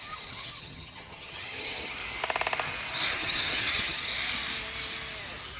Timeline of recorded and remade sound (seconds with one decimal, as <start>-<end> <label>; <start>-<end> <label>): 0.0-2.0 remade; 2.0-3.1 recorded; 3.1-4.1 remade; 4.1-5.6 recorded